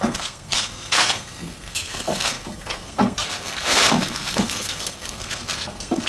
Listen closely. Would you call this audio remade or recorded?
remade